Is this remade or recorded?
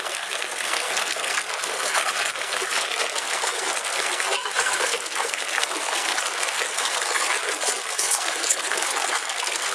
remade